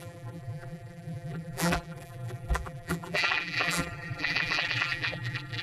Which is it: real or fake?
fake